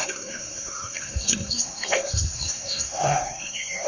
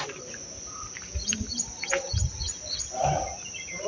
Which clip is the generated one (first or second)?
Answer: first